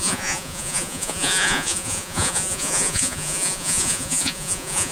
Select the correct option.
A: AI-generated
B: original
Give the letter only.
A